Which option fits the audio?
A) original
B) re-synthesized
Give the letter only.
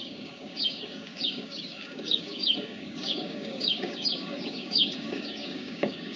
B